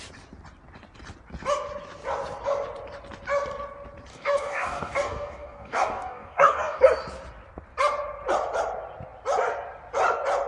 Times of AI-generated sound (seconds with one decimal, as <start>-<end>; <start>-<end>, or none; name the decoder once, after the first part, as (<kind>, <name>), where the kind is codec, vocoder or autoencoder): 4.1-6.8 (codec, DAC)